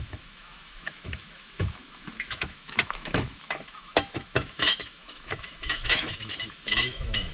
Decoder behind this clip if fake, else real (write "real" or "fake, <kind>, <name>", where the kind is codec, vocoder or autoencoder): fake, autoencoder, DAC-VAE